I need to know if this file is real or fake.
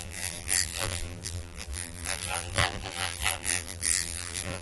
fake